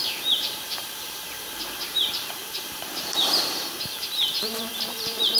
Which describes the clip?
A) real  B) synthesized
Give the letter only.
B